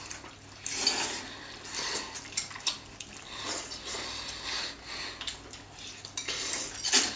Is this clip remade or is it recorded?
recorded